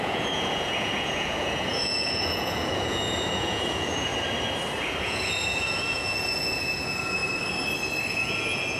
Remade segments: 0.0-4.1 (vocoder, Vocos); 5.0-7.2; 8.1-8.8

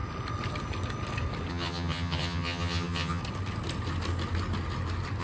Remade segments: 1.5-3.2 (vocoder, HiFi-GAN)